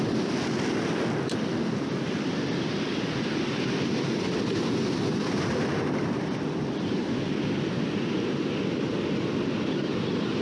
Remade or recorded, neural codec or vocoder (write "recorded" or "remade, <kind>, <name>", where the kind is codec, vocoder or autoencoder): recorded